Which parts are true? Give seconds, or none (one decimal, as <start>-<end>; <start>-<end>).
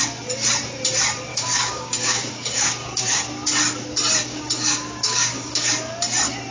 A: 0.0-1.3; 3.2-4.3; 5.7-6.5